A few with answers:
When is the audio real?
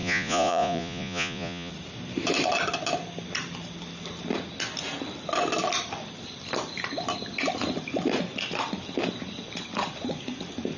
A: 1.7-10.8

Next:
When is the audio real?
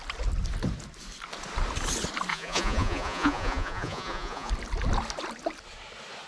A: 0.0-2.3; 4.5-6.3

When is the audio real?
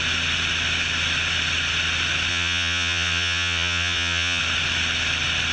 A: 0.0-2.3; 4.4-5.5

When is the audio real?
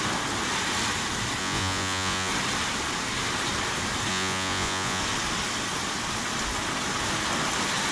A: 0.0-1.4; 2.3-4.1; 5.0-7.9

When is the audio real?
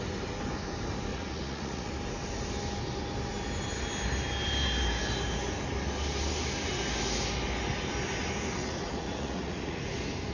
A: 0.0-1.1; 1.9-8.6; 9.8-10.3